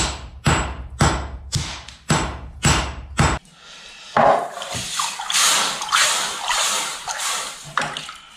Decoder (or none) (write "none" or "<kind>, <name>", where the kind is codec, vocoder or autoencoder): none